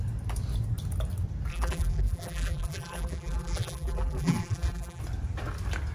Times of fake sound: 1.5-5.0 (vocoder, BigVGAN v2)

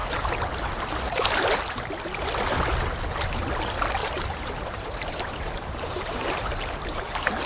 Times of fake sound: 4.0-7.5 (vocoder, BigVGAN v2)

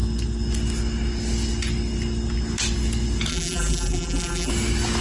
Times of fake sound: 3.3-4.5 (vocoder, BigVGAN v2)

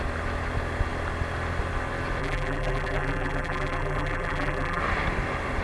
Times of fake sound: 2.2-4.8 (vocoder, BigVGAN v2)